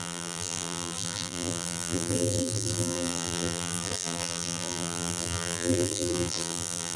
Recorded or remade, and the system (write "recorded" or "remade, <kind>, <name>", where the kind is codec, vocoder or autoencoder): remade, vocoder, BigVGAN v2